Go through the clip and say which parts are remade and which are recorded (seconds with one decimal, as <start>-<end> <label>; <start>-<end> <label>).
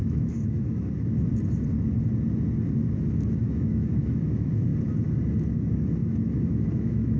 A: 0.0-1.3 remade; 1.3-3.1 recorded; 3.1-4.7 remade; 4.7-5.5 recorded; 5.5-7.2 remade